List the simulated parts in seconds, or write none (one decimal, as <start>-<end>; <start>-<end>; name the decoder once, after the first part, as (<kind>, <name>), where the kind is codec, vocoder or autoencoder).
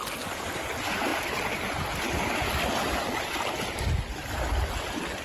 none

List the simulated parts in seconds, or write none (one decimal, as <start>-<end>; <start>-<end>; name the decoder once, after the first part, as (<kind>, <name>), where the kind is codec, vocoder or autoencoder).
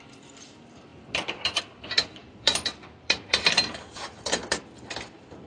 0.0-5.5 (vocoder, BigVGAN v2)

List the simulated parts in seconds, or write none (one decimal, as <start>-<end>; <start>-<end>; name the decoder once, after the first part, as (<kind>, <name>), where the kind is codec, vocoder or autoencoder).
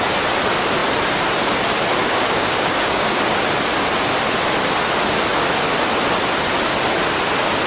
2.0-3.2 (codec, DAC)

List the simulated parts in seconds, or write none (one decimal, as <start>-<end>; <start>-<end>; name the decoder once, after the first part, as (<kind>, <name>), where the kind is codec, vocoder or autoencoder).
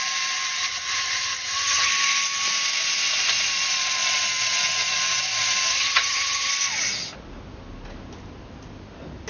0.6-1.9 (vocoder, HiFi-GAN); 5.7-6.5